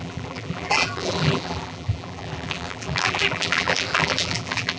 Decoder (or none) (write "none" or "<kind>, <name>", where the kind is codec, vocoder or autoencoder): vocoder, BigVGAN v2